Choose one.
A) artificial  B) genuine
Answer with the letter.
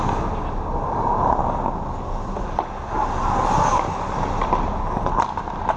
B